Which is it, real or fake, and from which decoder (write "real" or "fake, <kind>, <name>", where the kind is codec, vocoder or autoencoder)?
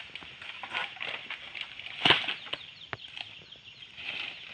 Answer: real